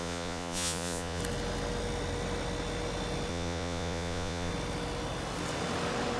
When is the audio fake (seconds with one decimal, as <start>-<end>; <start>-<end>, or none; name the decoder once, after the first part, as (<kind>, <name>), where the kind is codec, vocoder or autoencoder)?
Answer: 0.0-1.2 (vocoder, Vocos); 3.3-4.5